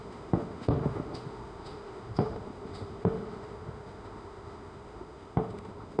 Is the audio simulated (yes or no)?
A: yes